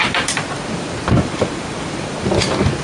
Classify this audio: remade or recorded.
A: remade